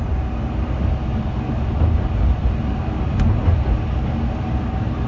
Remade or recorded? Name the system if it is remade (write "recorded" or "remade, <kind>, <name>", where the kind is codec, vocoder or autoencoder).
recorded